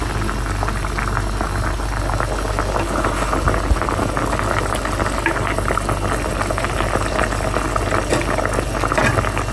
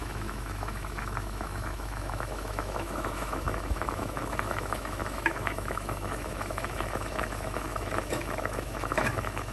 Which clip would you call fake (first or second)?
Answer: second